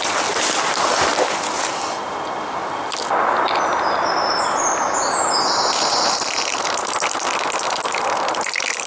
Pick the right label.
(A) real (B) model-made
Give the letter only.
A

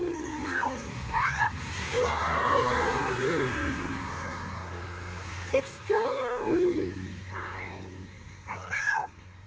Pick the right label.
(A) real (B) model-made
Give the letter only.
B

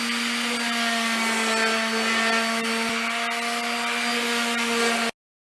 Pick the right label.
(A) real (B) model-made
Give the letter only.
A